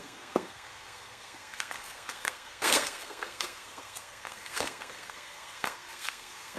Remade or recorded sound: remade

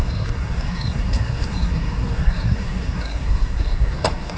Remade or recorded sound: remade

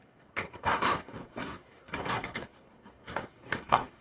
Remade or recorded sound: remade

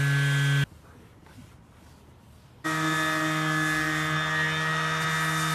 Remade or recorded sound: recorded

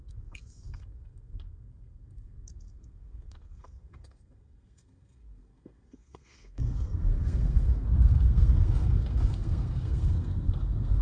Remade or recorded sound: remade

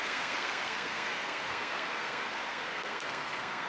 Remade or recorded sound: remade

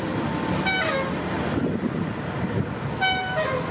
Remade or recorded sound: recorded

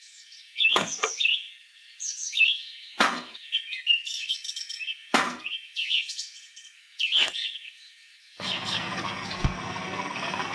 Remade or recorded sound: remade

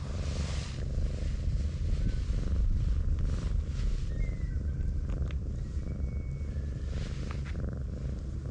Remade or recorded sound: recorded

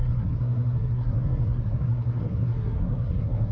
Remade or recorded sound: remade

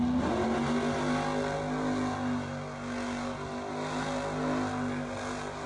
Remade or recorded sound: recorded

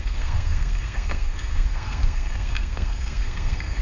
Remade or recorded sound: remade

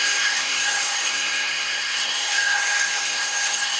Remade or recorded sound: remade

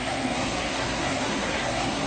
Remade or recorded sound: remade